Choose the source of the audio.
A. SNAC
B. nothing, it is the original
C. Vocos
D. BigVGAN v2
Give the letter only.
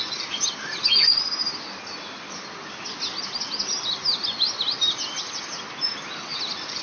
B